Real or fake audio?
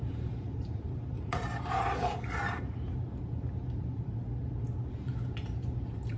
fake